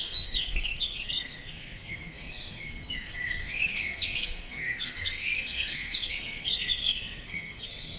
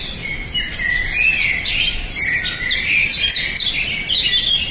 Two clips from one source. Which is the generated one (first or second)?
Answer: first